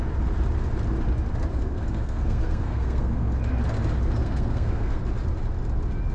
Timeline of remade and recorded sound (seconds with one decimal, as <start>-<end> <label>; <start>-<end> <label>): 0.0-1.5 recorded; 1.5-3.4 remade; 3.4-4.2 recorded; 4.2-5.0 remade; 5.0-6.1 recorded